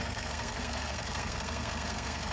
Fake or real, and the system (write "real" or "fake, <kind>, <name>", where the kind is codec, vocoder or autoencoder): fake, codec, SNAC